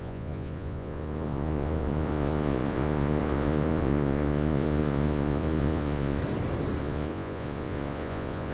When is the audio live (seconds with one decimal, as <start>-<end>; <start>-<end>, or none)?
6.2-6.8